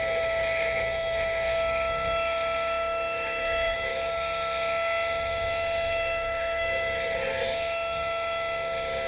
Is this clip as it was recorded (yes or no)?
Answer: no